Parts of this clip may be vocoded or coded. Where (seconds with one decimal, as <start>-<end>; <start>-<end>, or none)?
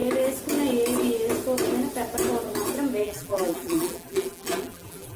3.0-5.2